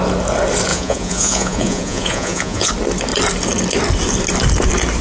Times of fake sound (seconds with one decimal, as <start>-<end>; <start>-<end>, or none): 0.7-2.7